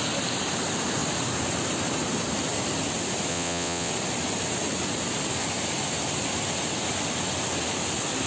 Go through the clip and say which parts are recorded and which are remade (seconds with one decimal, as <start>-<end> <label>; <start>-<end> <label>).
0.0-3.3 recorded; 3.3-3.9 remade; 3.9-8.3 recorded